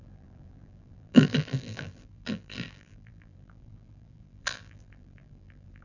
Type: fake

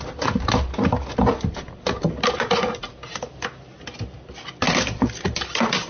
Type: real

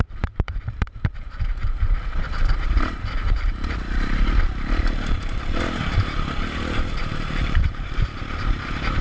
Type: fake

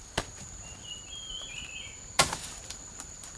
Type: fake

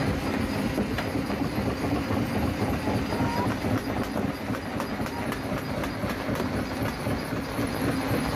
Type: real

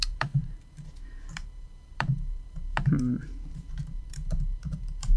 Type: fake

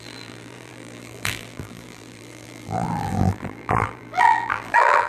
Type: fake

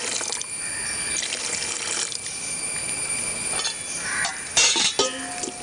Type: real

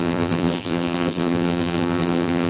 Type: fake